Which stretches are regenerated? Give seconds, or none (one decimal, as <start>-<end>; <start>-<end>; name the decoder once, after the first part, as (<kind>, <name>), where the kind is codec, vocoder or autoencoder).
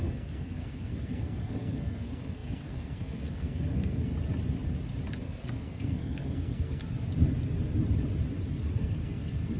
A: 0.0-4.1 (codec, SNAC); 5.2-6.8; 8.7-9.6